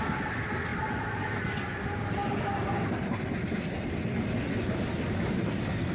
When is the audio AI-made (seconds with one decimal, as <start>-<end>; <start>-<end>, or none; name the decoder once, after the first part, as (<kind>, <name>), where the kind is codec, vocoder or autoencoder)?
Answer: none